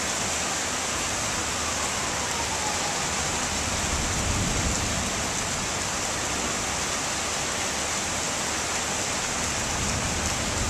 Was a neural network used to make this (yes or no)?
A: no